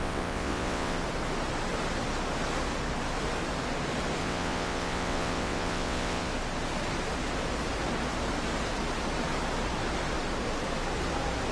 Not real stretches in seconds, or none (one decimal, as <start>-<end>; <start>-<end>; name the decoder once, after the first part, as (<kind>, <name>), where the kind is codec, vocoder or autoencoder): 0.0-1.0 (vocoder, WaveNeXt); 4.2-6.3